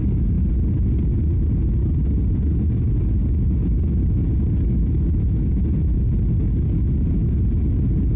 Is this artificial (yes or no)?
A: no